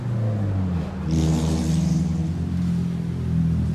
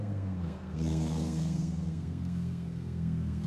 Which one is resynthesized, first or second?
second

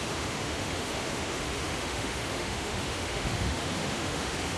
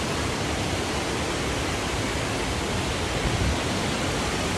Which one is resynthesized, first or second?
first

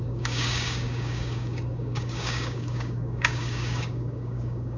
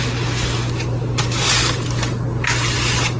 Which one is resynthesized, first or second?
first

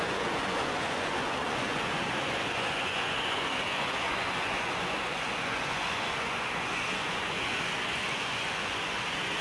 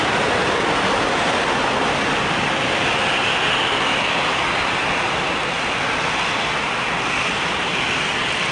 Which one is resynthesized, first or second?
first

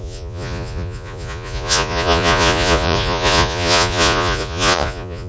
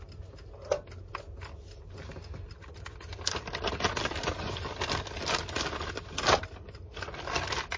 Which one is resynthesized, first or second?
first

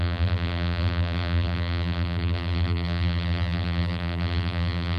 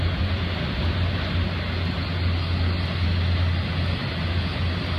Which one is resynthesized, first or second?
first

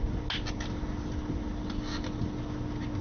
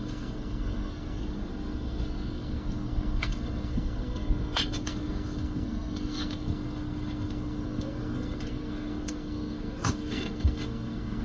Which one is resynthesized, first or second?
second